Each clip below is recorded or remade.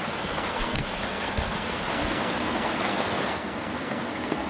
remade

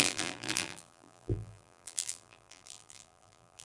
remade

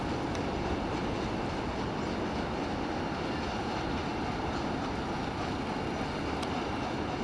recorded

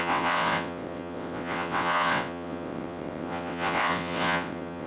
remade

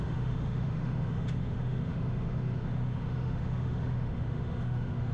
remade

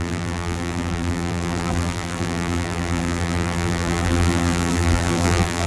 remade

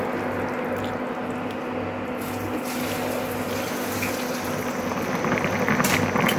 recorded